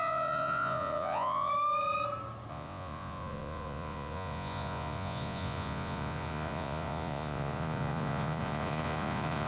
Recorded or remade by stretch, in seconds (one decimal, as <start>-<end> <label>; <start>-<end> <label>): 0.0-1.5 remade; 1.5-2.5 recorded; 2.5-9.5 remade